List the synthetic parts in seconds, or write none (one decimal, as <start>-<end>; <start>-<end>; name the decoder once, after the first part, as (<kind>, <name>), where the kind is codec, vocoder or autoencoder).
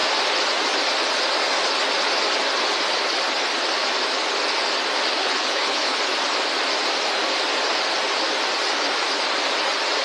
5.2-6.0 (codec, HILCodec)